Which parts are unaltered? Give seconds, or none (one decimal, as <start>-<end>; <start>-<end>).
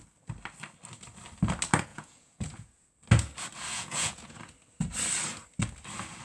0.0-1.9; 2.9-3.7; 4.3-6.2